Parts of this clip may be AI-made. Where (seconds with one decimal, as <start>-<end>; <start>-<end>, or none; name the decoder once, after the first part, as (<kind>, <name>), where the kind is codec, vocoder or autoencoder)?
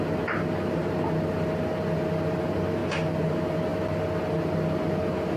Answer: none